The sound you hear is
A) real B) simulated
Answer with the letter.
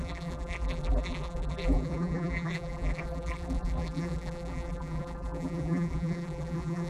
B